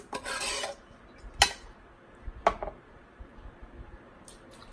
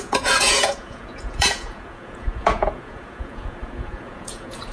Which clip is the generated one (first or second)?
second